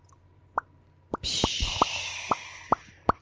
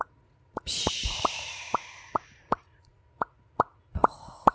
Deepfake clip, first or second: second